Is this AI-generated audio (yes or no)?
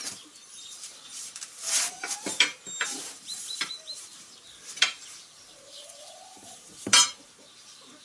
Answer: yes